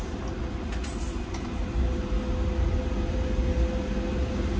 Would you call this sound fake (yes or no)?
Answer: no